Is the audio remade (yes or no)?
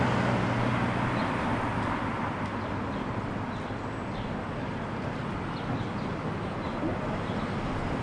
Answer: no